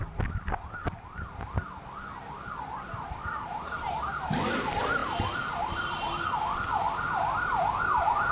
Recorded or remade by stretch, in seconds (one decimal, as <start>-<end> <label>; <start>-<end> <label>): 0.0-3.5 recorded; 3.5-4.2 remade; 4.2-5.0 recorded; 5.0-6.4 remade; 6.4-8.3 recorded